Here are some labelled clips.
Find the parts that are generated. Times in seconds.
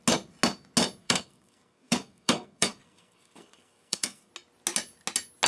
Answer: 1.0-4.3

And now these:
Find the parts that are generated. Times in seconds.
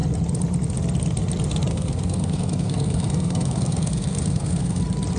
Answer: 1.7-4.8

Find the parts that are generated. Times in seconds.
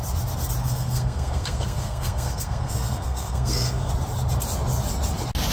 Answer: 0.6-3.9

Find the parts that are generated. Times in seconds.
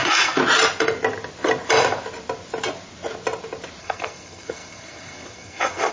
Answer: 0.0-0.4; 3.8-5.9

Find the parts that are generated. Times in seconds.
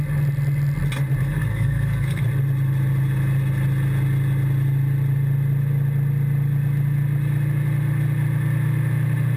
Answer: 1.5-2.2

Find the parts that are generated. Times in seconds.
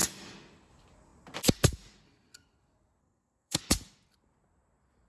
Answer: 3.0-3.6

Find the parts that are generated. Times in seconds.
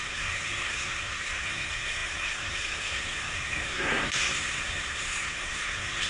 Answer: 0.0-6.1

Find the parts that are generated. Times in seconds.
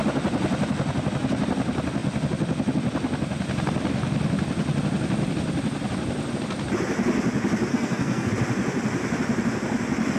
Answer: 7.7-8.3